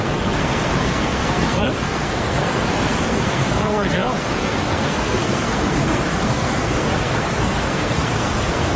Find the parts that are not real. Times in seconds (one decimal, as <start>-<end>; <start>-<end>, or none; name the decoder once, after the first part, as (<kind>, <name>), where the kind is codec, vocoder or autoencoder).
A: 0.0-8.8 (codec, SNAC)